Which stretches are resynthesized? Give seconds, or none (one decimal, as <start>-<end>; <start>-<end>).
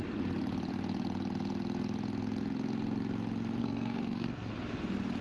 3.6-4.5